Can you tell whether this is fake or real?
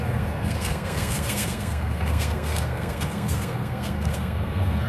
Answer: fake